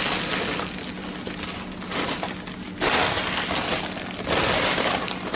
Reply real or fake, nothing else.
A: real